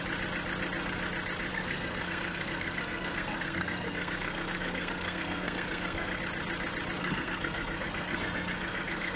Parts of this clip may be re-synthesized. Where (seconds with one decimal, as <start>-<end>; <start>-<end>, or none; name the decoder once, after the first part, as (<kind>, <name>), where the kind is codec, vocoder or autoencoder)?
1.5-6.2 (codec, SNAC); 7.0-9.2